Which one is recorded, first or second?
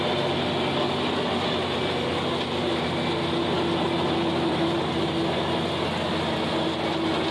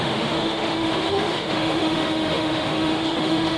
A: first